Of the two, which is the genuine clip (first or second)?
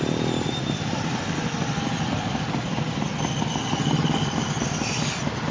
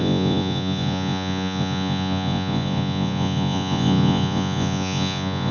first